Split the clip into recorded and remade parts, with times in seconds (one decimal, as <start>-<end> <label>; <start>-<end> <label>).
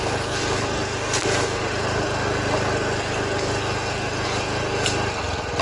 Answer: 0.0-5.6 recorded